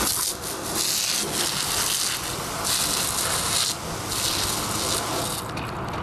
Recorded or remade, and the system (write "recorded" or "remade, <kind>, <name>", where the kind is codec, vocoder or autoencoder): recorded